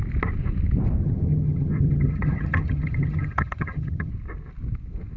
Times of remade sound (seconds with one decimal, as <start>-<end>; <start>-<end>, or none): 1.0-4.1